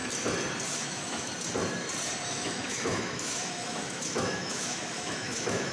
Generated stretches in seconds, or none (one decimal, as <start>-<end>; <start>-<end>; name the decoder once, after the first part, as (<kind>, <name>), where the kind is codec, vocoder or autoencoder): 0.8-1.3 (autoencoder, DAC-VAE); 2.3-5.7